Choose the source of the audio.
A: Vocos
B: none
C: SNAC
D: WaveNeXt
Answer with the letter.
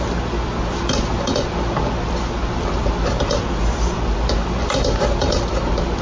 B